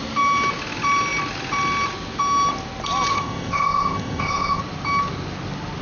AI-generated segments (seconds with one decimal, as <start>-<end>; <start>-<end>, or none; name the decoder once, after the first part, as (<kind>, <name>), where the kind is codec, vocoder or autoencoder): 3.1-4.6 (codec, ZipCodec)